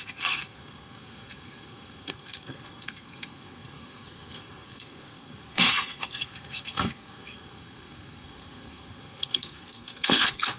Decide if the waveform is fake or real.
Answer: fake